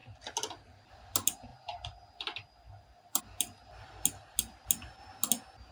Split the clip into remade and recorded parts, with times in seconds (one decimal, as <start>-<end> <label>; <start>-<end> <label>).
0.0-1.5 recorded; 1.5-3.2 remade; 3.2-5.7 recorded